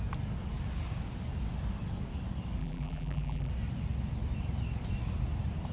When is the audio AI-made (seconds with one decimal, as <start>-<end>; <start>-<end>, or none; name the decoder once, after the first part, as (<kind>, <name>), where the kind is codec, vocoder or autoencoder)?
2.6-3.5 (vocoder, BigVGAN v2)